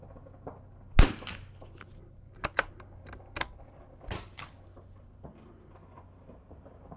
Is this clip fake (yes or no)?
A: no